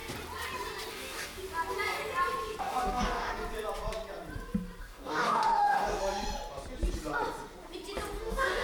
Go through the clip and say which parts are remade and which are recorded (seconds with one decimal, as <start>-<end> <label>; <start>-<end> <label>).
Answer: 0.0-0.9 recorded; 0.9-1.4 remade; 1.4-2.6 recorded; 2.6-3.3 remade; 3.3-4.8 recorded; 4.8-6.0 remade; 6.0-8.2 recorded; 8.2-8.6 remade